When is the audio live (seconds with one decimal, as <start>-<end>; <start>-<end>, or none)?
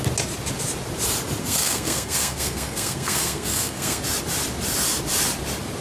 0.0-1.4; 4.0-5.8